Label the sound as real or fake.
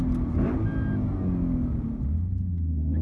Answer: real